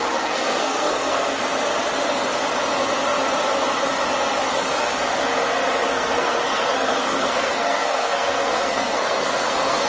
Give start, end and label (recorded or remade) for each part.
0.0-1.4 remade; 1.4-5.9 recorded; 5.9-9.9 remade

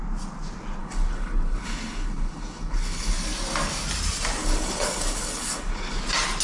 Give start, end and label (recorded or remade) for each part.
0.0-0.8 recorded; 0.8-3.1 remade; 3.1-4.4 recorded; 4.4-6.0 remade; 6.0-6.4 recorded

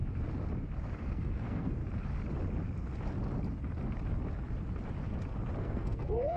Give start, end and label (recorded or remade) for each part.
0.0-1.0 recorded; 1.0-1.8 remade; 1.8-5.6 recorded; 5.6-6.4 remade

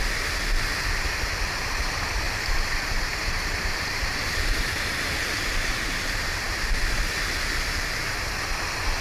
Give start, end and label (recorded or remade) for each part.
0.0-3.2 recorded; 3.2-5.8 remade; 5.8-9.0 recorded

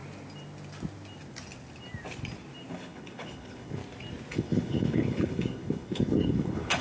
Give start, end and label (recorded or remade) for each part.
0.0-2.7 recorded; 2.7-3.8 remade; 3.8-4.3 recorded; 4.3-6.8 remade

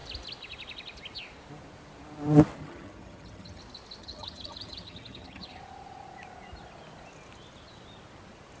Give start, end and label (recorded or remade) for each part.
0.0-2.6 recorded; 2.6-3.6 remade; 3.6-4.0 recorded; 4.0-5.6 remade; 5.6-8.6 recorded